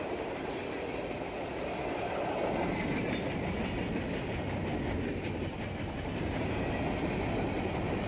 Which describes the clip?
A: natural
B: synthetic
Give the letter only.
A